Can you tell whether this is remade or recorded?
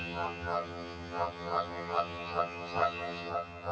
remade